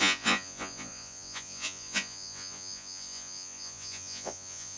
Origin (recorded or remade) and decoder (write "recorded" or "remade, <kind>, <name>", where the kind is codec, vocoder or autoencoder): remade, vocoder, Vocos